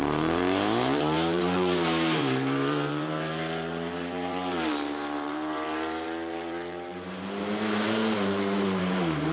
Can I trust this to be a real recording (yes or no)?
no